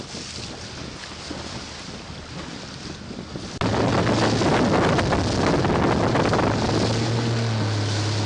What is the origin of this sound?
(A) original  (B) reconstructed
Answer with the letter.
A